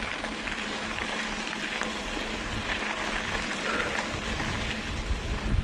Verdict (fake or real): real